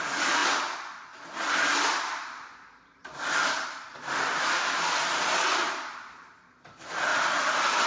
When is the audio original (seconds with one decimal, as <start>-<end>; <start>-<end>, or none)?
0.0-3.0; 4.2-7.1